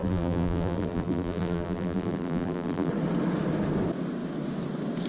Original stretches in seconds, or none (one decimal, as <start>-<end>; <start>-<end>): 2.9-5.1